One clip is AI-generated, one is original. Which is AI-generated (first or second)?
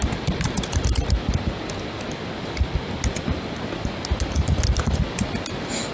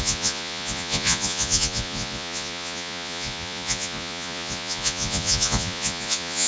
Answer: second